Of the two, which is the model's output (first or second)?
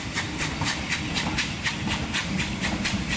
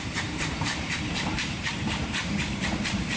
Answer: second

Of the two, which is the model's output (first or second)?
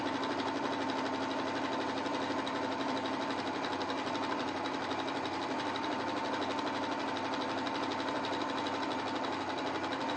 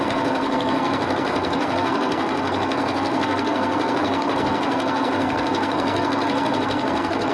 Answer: second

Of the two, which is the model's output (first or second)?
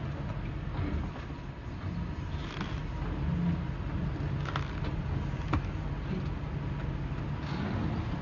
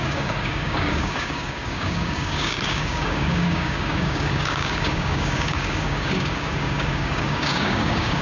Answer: second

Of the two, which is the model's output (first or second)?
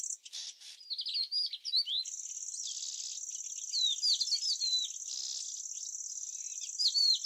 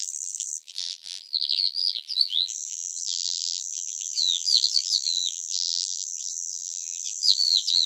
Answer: second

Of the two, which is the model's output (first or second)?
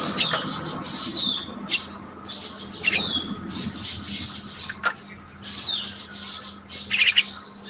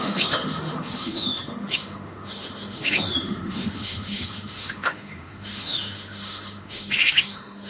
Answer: second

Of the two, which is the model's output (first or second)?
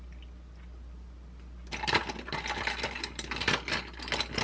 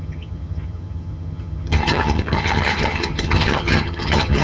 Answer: second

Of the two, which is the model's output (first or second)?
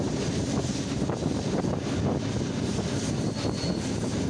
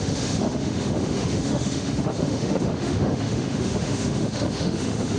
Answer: second